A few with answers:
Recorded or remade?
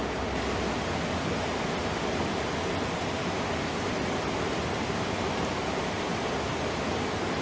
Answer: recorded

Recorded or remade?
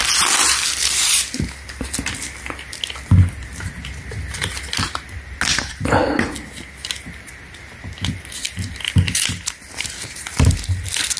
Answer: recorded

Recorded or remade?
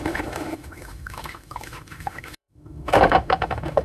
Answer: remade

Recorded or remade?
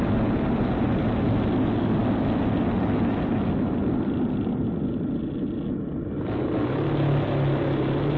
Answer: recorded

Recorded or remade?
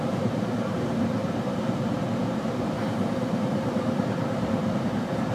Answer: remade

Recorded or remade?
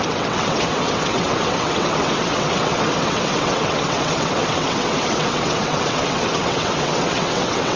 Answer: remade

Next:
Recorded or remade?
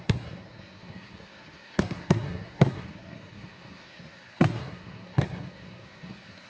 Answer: remade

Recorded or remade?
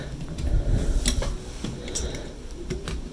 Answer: recorded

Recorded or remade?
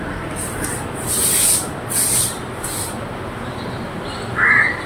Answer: recorded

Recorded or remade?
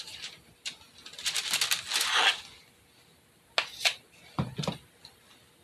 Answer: recorded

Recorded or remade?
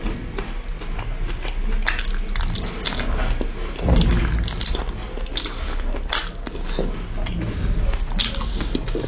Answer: recorded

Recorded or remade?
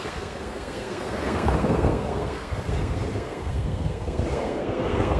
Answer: remade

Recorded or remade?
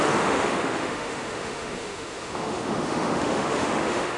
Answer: remade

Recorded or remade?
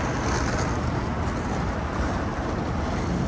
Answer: recorded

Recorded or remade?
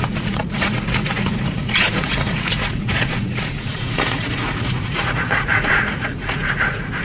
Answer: remade